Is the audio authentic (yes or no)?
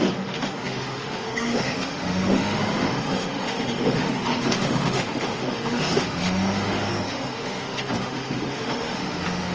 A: no